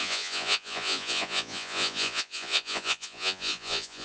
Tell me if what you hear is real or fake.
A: fake